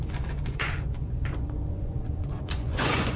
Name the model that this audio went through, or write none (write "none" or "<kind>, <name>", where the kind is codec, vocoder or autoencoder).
vocoder, Vocos